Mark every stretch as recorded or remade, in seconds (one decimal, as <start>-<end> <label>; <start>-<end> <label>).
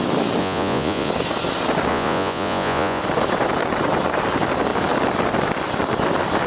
0.0-0.4 recorded; 0.4-1.1 remade; 1.1-1.9 recorded; 1.9-3.0 remade; 3.0-6.5 recorded